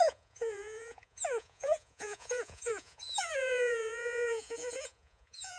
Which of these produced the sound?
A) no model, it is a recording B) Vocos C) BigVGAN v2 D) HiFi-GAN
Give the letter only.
B